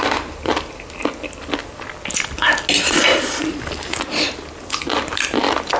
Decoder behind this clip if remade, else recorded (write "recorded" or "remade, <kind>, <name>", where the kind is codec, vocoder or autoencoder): recorded